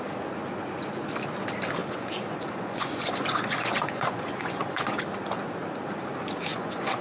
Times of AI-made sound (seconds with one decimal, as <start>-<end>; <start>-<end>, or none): 1.8-5.0; 6.5-7.0